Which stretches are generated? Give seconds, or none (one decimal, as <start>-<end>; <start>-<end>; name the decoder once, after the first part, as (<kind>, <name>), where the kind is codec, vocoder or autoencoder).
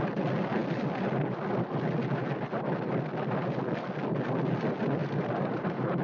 5.0-6.0 (vocoder, BigVGAN v2)